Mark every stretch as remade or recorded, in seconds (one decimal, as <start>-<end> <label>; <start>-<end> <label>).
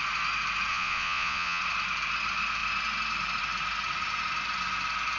0.0-0.7 recorded; 0.7-1.6 remade; 1.6-5.2 recorded